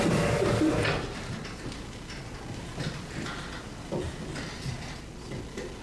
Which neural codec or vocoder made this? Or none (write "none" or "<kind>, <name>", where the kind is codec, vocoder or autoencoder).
none